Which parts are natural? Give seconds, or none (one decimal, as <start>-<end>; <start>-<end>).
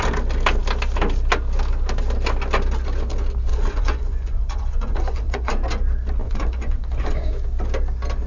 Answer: 0.0-3.5; 5.5-6.2; 7.3-8.3